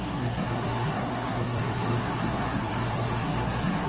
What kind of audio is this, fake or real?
fake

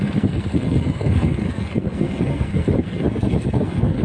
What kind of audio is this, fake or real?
fake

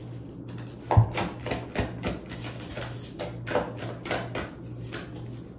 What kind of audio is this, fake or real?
real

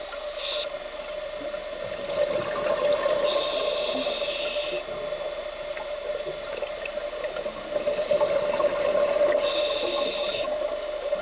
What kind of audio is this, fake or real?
real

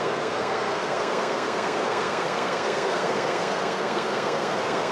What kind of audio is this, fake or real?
fake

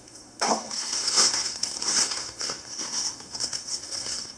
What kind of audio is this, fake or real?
fake